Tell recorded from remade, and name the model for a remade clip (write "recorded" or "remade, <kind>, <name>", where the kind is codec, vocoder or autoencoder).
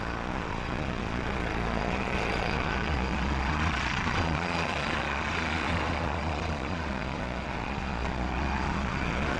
remade, vocoder, Vocos